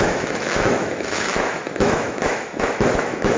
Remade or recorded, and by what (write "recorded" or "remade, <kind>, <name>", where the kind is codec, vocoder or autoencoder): remade, autoencoder, DAC-VAE